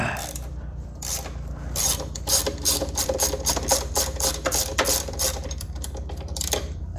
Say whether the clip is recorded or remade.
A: remade